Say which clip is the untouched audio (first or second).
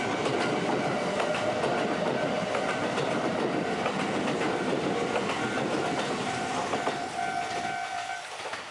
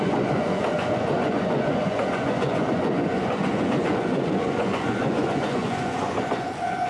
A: first